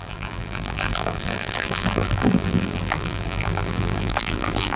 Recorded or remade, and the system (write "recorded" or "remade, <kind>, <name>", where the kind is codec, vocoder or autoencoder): remade, vocoder, BigVGAN v2